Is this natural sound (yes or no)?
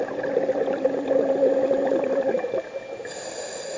yes